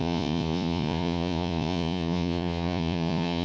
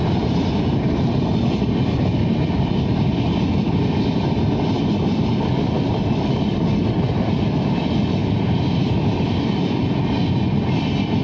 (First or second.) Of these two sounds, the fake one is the first